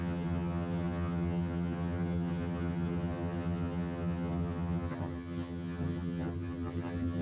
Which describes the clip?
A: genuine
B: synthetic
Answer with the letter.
B